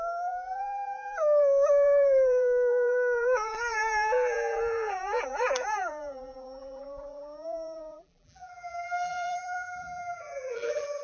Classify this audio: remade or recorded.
remade